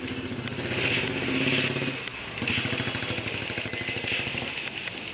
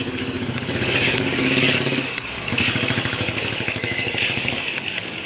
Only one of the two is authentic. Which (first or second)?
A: first